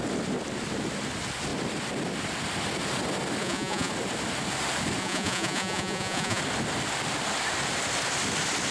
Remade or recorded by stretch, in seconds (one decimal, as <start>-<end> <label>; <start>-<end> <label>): 0.0-3.4 recorded; 3.4-3.9 remade; 3.9-5.0 recorded; 5.0-6.4 remade; 6.4-8.7 recorded